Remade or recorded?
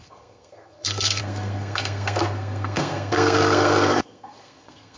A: remade